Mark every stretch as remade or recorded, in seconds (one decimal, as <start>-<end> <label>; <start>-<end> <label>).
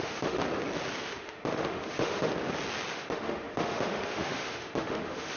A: 0.0-0.4 remade; 0.4-1.0 recorded; 1.0-2.3 remade; 2.3-2.9 recorded; 2.9-5.4 remade